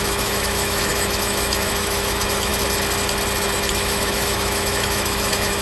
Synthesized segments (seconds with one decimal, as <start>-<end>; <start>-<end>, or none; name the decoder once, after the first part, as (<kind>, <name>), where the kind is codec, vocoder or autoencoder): 0.0-2.5 (autoencoder, DAC-VAE); 3.7-5.6